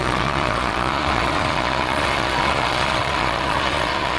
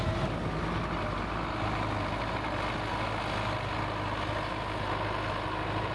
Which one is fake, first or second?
first